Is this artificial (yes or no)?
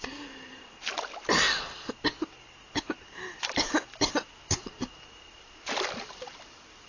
no